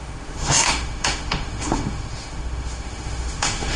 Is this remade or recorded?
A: remade